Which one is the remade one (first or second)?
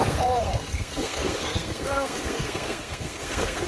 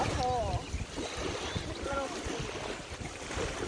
first